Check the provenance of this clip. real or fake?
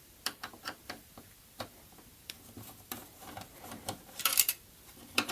fake